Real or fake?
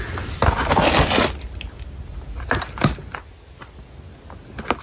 real